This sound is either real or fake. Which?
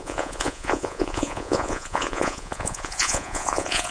fake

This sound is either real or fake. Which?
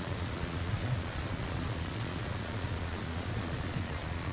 fake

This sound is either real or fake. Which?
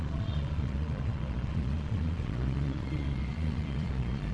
fake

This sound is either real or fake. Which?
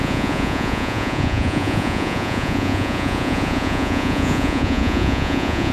fake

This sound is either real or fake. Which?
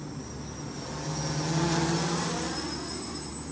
real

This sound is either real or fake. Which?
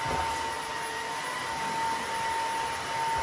real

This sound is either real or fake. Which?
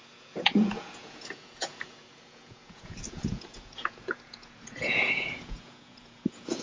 fake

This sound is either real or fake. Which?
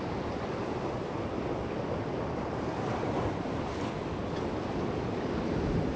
real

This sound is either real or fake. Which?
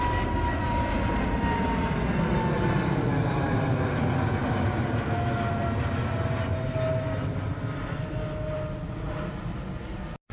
real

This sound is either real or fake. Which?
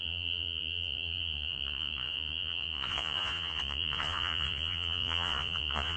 fake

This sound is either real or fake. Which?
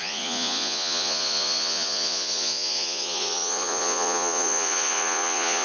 fake